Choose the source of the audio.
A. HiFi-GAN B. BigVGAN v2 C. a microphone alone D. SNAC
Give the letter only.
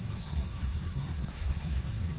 D